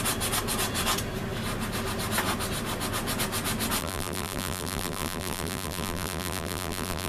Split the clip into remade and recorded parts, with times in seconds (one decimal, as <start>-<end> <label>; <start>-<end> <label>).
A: 0.0-3.8 recorded; 3.8-7.1 remade